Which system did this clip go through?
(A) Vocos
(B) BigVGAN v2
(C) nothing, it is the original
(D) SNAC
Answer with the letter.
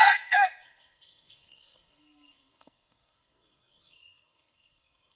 D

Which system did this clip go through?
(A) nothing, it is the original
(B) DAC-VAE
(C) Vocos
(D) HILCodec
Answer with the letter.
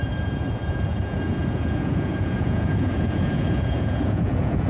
C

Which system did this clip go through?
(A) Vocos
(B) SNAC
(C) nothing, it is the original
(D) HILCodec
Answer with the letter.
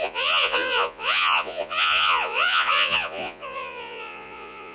A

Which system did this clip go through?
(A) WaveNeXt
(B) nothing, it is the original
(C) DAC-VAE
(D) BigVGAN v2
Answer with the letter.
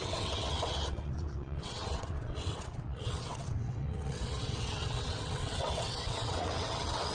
A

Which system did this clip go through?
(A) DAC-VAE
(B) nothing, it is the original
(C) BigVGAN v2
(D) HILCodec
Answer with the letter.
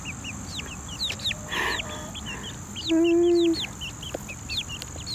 B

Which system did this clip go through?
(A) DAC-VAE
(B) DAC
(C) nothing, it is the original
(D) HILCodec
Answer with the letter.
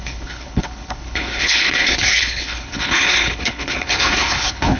D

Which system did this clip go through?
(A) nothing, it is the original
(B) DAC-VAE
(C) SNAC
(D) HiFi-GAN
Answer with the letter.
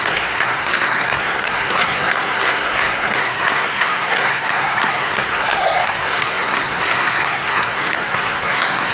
C